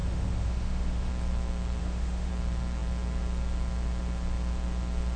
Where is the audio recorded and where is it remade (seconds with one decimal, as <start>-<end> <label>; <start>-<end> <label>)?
0.0-1.1 remade; 1.1-1.8 recorded; 1.8-2.3 remade; 2.3-5.2 recorded